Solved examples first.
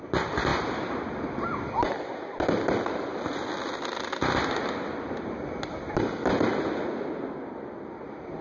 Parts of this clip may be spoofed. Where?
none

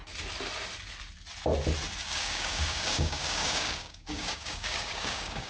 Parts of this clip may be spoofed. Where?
2.0-5.5 (codec, DAC)

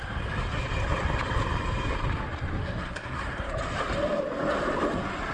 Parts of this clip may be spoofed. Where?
2.6-3.5 (codec, SNAC)

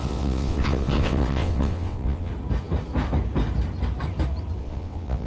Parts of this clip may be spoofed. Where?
0.0-2.3 (vocoder, WaveNeXt); 4.6-5.3

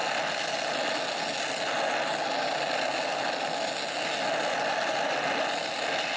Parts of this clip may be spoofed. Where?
none